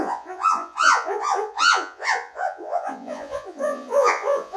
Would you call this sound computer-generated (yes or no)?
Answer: yes